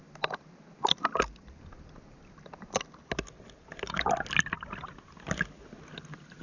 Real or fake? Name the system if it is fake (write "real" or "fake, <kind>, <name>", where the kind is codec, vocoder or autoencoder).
real